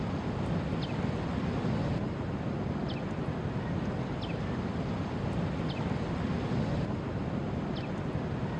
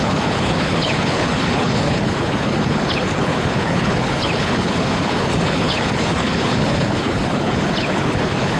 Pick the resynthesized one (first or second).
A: second